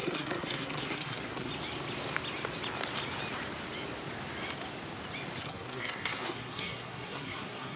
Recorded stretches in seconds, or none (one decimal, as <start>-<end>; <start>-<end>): 1.5-5.4